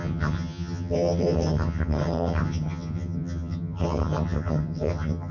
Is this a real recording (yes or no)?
no